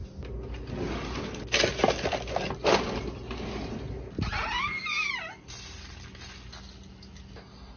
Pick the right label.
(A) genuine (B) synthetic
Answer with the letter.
A